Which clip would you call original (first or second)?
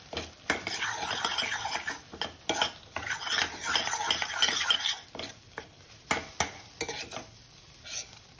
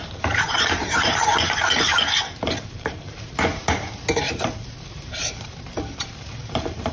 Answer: first